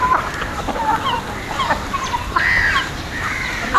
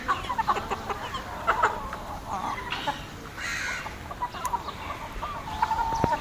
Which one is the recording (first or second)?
second